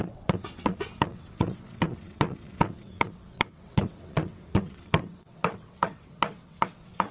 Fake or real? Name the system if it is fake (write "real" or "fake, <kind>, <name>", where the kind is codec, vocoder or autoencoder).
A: fake, vocoder, WaveNeXt